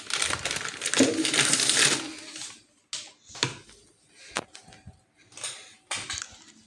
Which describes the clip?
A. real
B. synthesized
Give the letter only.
A